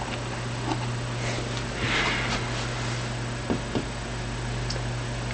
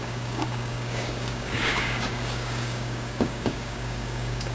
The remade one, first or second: second